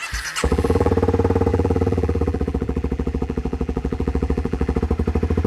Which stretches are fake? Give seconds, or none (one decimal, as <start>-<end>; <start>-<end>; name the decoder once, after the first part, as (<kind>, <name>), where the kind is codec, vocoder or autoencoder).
0.4-0.9 (vocoder, BigVGAN v2); 1.5-4.8